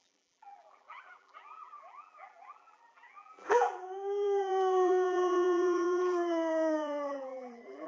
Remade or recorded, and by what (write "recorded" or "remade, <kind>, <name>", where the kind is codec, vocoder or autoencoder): remade, vocoder, BigVGAN v2